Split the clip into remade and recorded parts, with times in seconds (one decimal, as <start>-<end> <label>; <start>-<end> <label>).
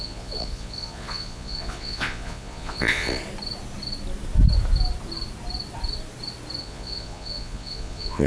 0.0-3.2 remade; 3.2-6.6 recorded; 6.6-8.3 remade